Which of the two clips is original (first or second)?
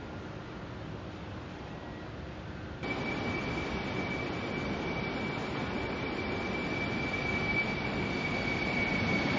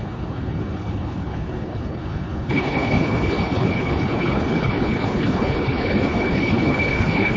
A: first